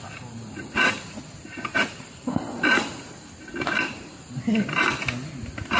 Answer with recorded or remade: recorded